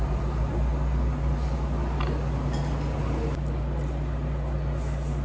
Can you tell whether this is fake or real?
real